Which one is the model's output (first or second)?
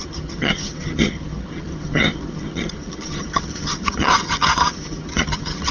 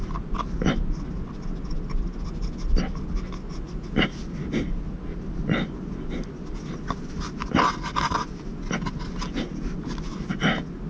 first